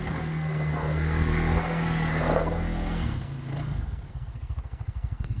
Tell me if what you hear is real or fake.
fake